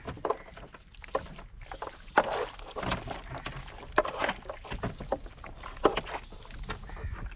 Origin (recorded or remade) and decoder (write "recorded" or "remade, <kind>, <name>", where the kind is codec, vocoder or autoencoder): recorded